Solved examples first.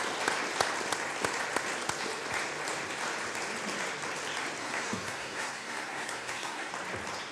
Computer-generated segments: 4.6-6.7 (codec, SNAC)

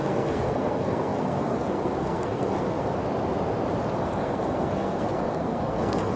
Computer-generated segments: 0.0-3.0 (codec, SNAC); 4.0-6.2

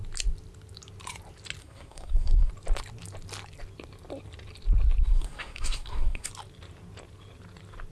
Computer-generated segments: 1.6-2.5 (codec, SNAC); 5.0-6.3

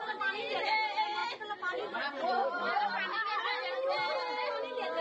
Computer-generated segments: none